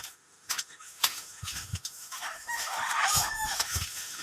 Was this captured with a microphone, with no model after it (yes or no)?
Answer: no